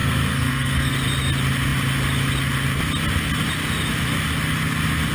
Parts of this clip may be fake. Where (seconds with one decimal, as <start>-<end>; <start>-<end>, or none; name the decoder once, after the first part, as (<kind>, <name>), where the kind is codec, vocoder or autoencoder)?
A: 0.0-0.9 (codec, SNAC)